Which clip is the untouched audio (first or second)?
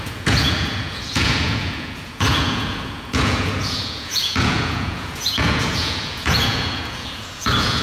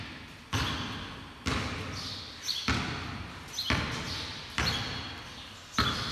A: second